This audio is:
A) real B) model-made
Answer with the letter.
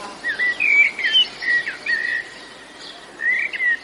A